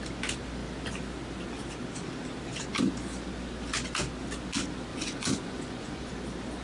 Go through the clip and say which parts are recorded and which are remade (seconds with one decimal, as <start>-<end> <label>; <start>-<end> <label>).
0.0-4.9 recorded; 4.9-6.1 remade; 6.1-6.6 recorded